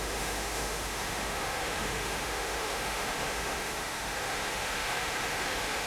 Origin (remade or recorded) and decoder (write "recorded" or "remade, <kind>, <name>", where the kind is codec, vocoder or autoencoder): remade, autoencoder, DAC-VAE